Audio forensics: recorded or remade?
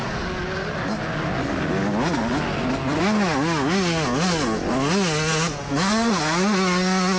recorded